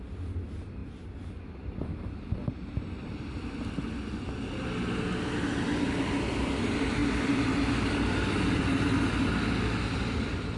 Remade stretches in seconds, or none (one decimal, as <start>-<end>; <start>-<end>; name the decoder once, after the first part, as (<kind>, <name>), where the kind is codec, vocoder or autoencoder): 7.0-7.7 (vocoder, BigVGAN v2)